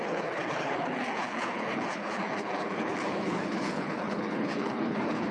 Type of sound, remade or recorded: remade